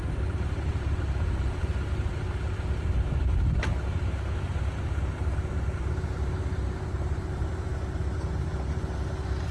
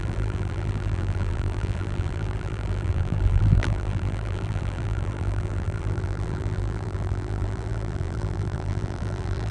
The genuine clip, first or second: first